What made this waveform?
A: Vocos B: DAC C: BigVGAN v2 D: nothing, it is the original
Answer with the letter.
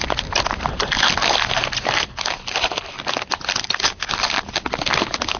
D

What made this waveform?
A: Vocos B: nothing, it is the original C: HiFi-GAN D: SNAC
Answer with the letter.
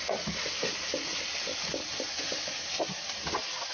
B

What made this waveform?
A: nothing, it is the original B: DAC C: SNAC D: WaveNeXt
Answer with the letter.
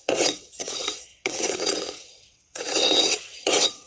D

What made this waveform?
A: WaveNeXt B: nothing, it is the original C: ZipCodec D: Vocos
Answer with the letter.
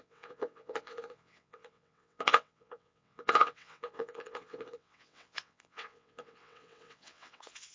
A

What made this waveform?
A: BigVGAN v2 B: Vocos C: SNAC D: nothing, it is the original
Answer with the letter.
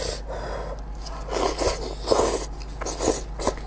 D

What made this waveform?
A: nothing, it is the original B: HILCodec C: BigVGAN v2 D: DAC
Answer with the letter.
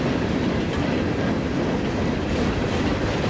A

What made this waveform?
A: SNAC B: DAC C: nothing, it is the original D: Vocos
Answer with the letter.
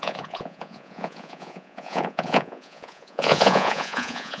D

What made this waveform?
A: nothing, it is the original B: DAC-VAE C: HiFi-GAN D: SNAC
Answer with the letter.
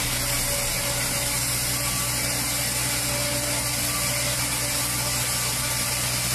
A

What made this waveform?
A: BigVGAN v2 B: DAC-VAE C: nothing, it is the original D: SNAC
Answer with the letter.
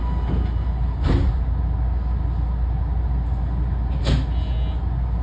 C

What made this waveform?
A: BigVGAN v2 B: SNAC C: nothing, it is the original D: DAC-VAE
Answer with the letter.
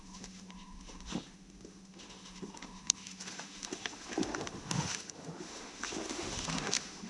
D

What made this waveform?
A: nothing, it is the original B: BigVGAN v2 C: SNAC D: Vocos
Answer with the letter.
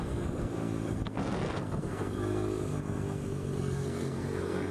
C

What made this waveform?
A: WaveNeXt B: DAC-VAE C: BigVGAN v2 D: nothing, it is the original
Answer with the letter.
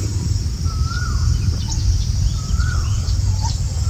C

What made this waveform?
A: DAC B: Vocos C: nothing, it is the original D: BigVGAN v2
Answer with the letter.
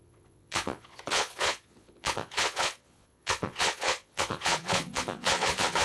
B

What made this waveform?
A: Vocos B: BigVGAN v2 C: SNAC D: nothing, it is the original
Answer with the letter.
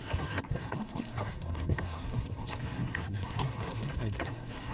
C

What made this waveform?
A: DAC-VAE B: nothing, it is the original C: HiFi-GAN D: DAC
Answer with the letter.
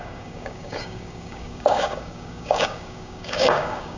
D